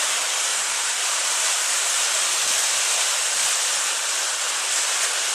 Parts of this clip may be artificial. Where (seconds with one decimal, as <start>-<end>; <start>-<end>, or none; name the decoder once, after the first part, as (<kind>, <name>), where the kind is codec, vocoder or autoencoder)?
0.5-3.7 (vocoder, BigVGAN v2)